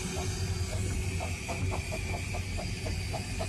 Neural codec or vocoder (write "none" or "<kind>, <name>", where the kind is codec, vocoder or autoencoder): none